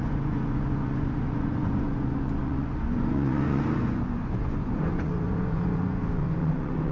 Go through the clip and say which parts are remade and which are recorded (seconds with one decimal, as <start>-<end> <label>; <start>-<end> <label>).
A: 0.0-6.9 remade